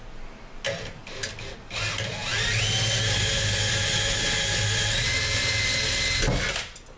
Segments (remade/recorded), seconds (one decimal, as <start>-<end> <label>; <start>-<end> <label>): 0.0-7.0 recorded